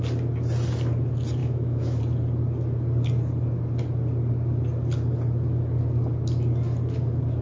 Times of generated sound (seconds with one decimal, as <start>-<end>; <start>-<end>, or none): 1.4-2.0